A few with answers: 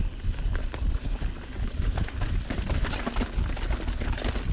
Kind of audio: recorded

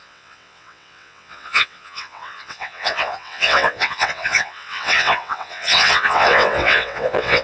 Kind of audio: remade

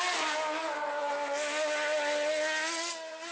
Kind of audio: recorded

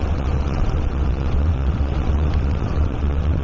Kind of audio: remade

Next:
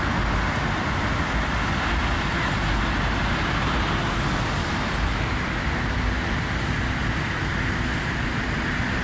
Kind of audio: recorded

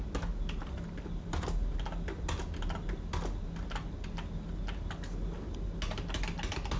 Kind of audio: recorded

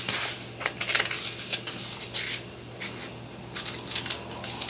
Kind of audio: recorded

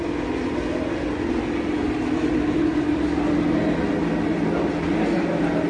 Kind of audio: recorded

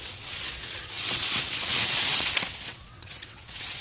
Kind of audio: remade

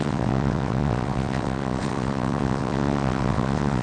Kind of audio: remade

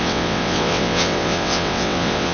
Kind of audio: remade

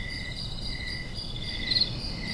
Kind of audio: recorded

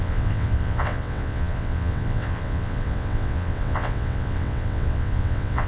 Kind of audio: remade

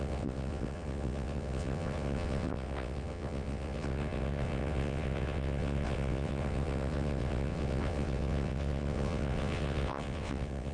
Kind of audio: remade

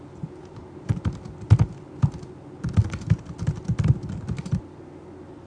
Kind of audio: recorded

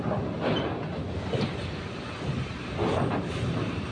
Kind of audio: recorded